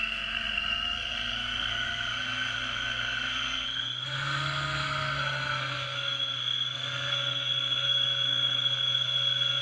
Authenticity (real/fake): fake